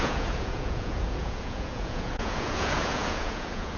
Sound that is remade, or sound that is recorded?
remade